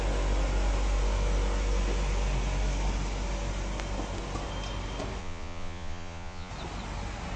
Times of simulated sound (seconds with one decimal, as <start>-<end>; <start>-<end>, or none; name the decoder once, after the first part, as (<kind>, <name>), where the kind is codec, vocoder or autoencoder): 5.2-6.5 (vocoder, Vocos)